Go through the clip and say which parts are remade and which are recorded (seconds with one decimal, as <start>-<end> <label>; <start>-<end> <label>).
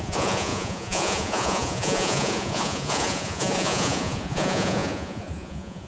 0.0-5.9 remade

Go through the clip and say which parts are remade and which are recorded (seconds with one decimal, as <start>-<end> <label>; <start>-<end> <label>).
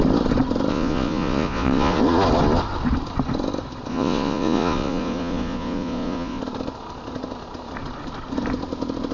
0.0-0.7 recorded; 0.7-2.0 remade; 2.0-3.9 recorded; 3.9-6.4 remade; 6.4-9.1 recorded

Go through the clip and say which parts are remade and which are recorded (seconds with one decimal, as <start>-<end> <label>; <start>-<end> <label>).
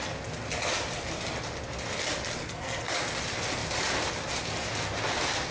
0.0-2.4 recorded; 2.4-3.0 remade; 3.0-5.5 recorded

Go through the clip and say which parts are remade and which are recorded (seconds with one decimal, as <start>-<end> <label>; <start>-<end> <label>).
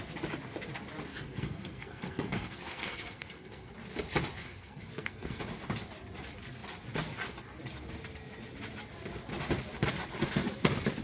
0.0-1.1 recorded; 1.1-3.7 remade; 3.7-4.4 recorded; 4.4-5.4 remade; 5.4-11.0 recorded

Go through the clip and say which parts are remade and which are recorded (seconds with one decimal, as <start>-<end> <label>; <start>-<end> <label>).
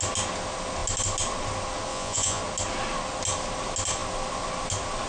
0.0-1.9 recorded; 1.9-2.4 remade; 2.4-5.1 recorded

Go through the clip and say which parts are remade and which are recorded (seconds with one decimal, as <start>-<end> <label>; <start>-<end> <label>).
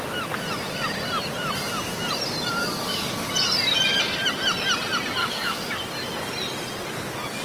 0.0-2.6 recorded; 2.6-3.1 remade; 3.1-5.2 recorded; 5.2-5.7 remade; 5.7-7.4 recorded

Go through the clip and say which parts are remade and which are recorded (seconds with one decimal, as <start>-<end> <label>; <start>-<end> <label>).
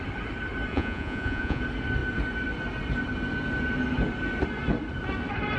0.0-0.7 recorded; 0.7-1.6 remade; 1.6-5.6 recorded